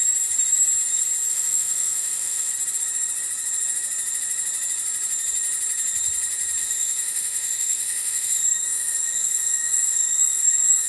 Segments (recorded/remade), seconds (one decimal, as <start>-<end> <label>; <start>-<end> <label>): 0.0-1.3 recorded; 1.3-2.5 remade; 2.5-6.6 recorded; 6.6-10.9 remade